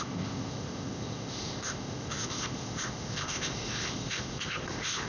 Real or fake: fake